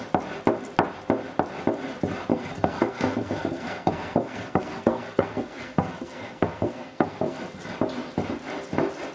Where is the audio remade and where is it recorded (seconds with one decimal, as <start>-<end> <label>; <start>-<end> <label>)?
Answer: 0.0-2.3 recorded; 2.3-7.4 remade; 7.4-9.1 recorded